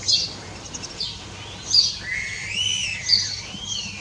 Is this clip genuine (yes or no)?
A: yes